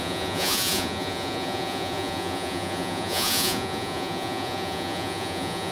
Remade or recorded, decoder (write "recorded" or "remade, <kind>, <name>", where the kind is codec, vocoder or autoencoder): remade, vocoder, Vocos